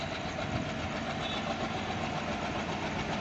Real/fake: real